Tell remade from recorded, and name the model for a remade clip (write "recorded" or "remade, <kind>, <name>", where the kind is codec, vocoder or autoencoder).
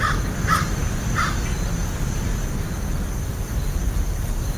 remade, vocoder, BigVGAN v2